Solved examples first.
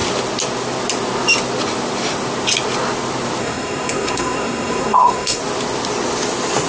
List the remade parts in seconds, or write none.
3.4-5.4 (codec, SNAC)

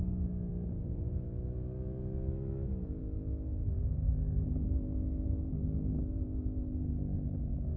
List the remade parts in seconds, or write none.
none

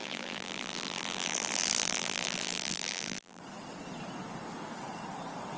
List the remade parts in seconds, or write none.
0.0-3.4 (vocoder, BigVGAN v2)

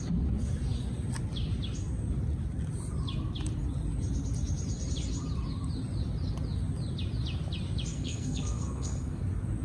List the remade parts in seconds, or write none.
7.9-9.2 (codec, SNAC)

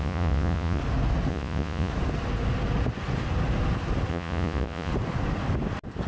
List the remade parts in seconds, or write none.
0.0-0.8 (vocoder, Vocos); 1.3-1.9; 4.1-4.9